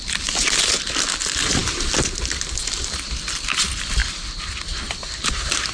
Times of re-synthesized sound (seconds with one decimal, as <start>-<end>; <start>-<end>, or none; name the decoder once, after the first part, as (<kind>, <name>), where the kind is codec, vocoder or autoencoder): none